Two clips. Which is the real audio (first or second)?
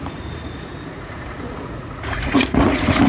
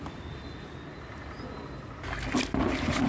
second